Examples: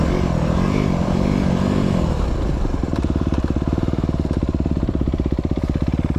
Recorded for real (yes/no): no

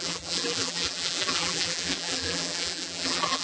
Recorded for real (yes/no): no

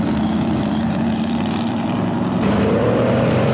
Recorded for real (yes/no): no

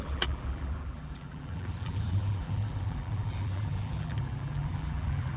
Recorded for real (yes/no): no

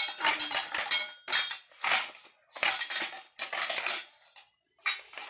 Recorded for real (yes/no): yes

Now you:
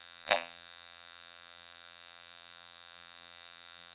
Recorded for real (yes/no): no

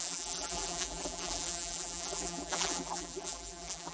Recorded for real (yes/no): no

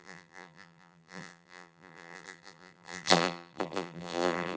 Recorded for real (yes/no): no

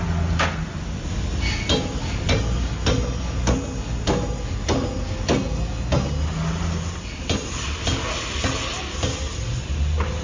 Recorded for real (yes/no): yes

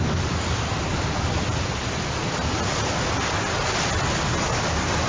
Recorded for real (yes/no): yes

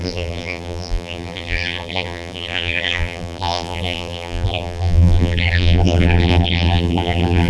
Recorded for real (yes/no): no